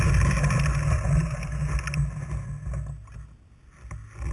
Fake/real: real